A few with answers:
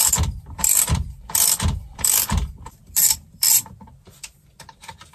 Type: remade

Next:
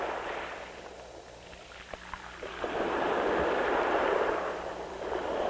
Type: remade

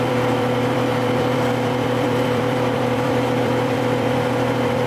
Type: remade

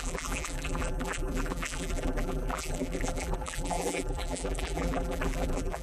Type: remade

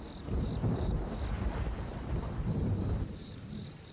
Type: remade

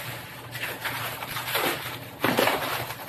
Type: remade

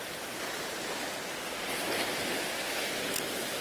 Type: recorded